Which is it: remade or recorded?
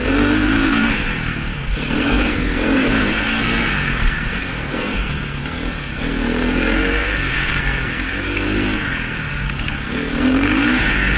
remade